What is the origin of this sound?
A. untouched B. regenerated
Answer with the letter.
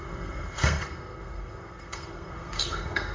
B